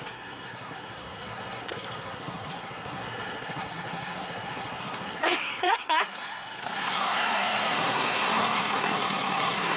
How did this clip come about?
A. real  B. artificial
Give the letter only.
B